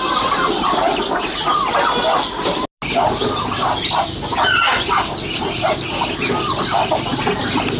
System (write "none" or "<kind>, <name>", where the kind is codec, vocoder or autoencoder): none